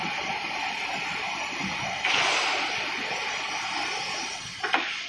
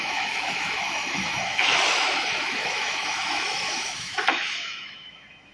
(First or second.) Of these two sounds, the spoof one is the second